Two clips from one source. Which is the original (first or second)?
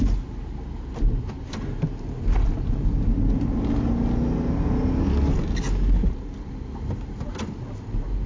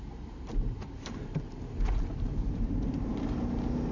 first